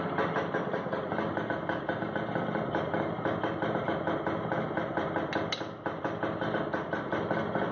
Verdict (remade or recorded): recorded